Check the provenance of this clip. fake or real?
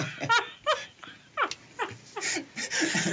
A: real